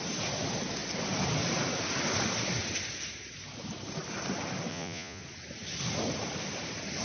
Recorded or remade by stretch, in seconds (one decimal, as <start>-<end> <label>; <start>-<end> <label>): 0.0-4.7 recorded; 4.7-5.2 remade; 5.2-7.0 recorded